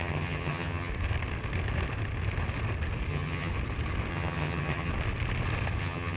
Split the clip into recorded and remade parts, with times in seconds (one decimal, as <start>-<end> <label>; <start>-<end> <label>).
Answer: 0.0-0.9 remade; 0.9-3.1 recorded; 3.1-3.5 remade; 3.5-4.1 recorded; 4.1-4.9 remade; 4.9-5.8 recorded; 5.8-6.2 remade